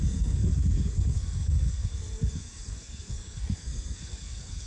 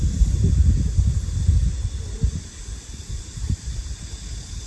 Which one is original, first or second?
second